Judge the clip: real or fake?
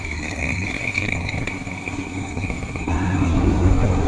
fake